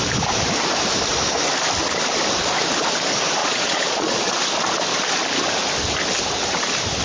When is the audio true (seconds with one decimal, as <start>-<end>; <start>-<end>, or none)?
0.0-3.4; 4.3-7.0